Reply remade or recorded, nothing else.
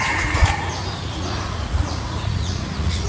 remade